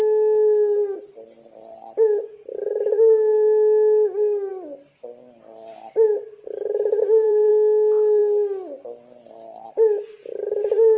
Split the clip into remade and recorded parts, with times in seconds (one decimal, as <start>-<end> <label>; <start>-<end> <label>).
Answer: 0.0-4.5 recorded; 4.5-7.5 remade; 7.5-11.0 recorded